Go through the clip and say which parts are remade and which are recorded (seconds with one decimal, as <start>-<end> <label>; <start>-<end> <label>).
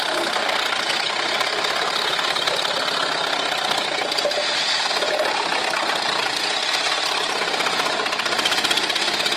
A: 0.0-9.4 recorded